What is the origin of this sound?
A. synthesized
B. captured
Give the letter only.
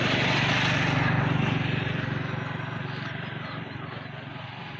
B